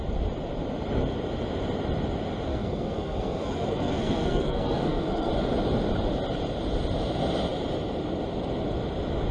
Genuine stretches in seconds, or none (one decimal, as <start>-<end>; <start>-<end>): 0.0-2.5; 5.3-9.3